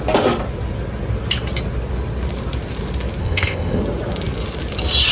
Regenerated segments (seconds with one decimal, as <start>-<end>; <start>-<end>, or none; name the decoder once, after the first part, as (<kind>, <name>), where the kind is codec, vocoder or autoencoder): 3.2-3.8 (codec, ZipCodec)